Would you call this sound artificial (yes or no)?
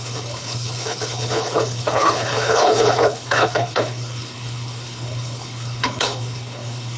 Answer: yes